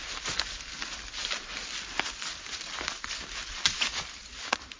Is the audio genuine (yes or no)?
yes